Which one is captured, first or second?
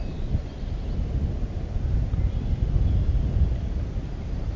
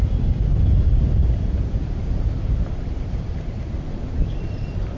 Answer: first